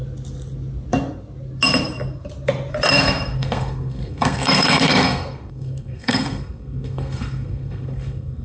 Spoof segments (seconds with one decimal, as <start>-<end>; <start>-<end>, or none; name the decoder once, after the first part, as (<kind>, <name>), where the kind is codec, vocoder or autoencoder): 2.9-8.4 (codec, SNAC)